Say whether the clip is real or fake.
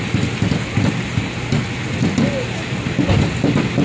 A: real